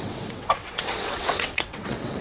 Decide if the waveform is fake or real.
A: fake